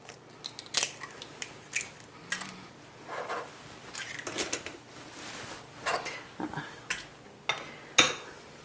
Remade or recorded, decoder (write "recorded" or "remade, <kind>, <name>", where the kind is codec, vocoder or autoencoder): recorded